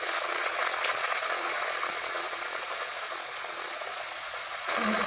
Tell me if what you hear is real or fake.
fake